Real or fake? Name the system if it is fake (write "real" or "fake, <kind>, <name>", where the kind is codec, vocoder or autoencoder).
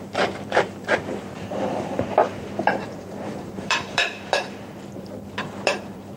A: fake, vocoder, BigVGAN v2